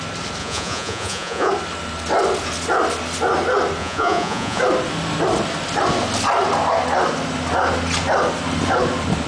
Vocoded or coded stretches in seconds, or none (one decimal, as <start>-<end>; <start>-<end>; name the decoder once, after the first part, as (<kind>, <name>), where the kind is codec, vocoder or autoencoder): 0.4-1.5 (vocoder, Vocos); 3.8-4.6